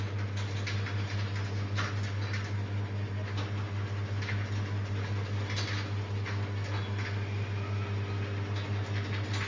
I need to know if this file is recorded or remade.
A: recorded